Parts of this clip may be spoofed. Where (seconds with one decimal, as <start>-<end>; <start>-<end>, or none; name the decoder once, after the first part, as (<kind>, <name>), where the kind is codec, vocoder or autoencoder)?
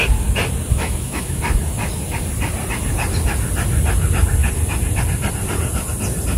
0.7-1.4 (autoencoder, DAC-VAE)